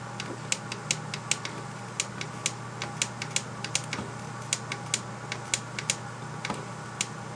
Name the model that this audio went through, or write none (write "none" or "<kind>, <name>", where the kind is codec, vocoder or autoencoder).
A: none